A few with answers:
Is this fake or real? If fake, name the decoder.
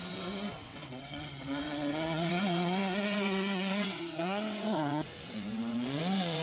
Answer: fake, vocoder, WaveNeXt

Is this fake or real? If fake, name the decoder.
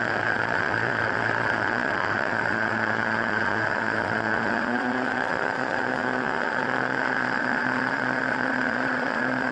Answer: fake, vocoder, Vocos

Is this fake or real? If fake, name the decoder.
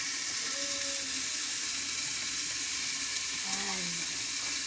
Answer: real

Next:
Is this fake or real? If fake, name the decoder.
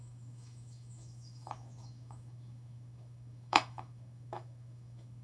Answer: fake, autoencoder, DAC-VAE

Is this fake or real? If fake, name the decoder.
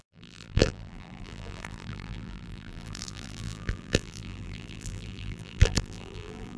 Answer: fake, vocoder, BigVGAN v2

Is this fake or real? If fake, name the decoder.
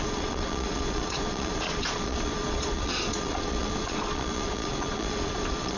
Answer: fake, vocoder, Vocos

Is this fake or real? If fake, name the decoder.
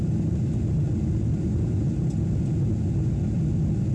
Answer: real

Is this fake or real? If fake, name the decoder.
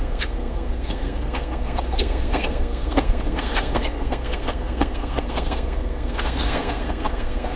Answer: fake, codec, SNAC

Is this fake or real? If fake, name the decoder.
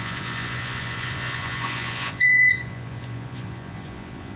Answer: fake, vocoder, Vocos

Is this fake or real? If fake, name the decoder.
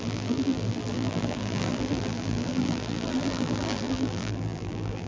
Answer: fake, vocoder, BigVGAN v2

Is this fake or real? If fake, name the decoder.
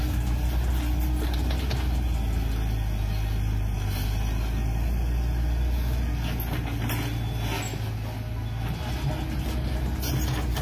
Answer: real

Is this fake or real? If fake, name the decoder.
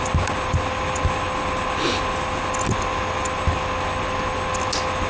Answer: real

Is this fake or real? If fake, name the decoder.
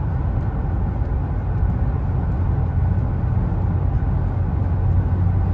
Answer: real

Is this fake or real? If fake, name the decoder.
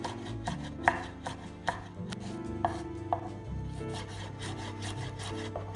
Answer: real